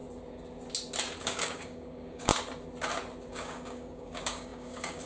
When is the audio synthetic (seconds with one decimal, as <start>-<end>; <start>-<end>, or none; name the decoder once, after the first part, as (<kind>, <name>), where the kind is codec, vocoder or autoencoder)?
1.2-2.3 (codec, DAC); 3.3-5.1